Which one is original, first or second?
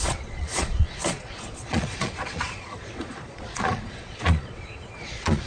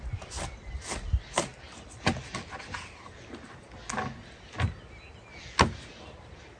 second